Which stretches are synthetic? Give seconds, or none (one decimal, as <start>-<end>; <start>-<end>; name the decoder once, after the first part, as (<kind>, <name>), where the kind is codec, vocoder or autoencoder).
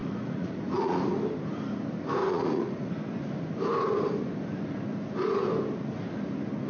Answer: 0.0-1.0 (vocoder, Vocos); 2.2-2.9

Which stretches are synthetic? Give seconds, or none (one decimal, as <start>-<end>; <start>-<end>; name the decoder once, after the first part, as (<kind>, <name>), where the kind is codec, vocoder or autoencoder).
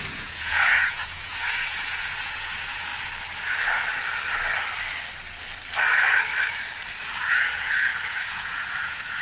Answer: 0.0-2.9 (vocoder, Vocos); 7.3-9.2